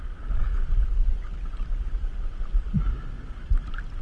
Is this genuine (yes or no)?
yes